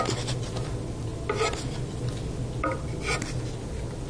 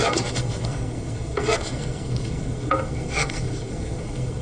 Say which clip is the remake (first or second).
second